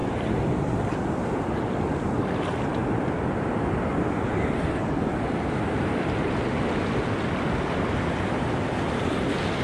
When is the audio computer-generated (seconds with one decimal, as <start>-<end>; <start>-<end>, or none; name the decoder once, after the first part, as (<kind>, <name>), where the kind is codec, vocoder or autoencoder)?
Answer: none